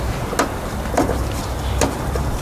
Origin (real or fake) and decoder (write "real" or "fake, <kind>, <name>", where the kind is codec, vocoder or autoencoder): real